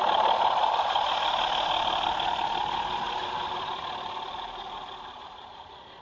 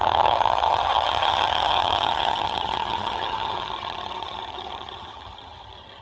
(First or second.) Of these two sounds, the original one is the first